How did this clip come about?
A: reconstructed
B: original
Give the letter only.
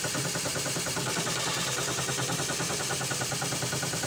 B